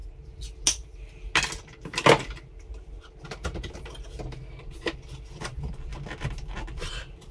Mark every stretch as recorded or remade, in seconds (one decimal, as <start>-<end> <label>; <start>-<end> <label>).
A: 0.0-7.3 recorded